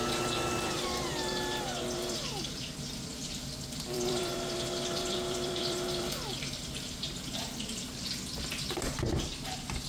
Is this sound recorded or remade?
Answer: remade